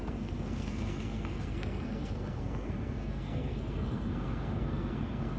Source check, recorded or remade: remade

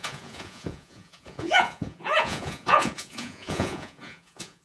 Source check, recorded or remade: remade